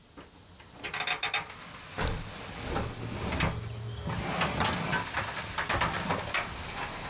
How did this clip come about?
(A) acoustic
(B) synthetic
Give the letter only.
A